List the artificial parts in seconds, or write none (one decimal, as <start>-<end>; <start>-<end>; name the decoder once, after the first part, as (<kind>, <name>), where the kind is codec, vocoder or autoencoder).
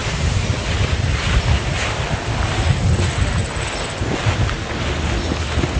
none